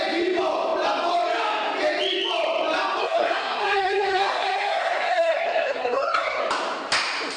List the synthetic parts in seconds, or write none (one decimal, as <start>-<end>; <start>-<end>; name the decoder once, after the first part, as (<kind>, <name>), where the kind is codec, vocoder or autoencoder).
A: 3.0-6.4 (codec, SNAC)